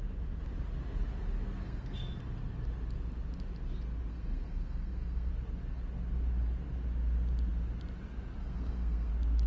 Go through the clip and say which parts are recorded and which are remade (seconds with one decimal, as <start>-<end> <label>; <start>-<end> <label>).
0.0-1.6 recorded; 1.6-2.2 remade; 2.2-4.1 recorded; 4.1-5.3 remade; 5.3-8.4 recorded; 8.4-9.1 remade; 9.1-9.5 recorded